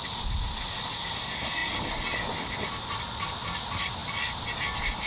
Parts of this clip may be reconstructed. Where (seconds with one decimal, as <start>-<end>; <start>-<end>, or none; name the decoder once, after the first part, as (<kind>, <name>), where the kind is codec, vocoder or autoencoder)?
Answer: none